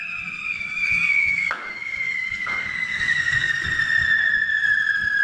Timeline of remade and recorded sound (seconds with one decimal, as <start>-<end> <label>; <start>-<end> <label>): 0.0-0.4 recorded; 0.4-3.5 remade; 3.5-5.2 recorded